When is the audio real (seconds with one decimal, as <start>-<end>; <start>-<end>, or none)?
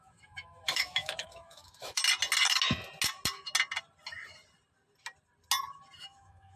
2.0-6.0